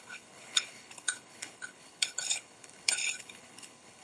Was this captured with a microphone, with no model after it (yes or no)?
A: no